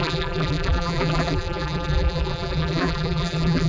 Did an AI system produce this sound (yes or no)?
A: yes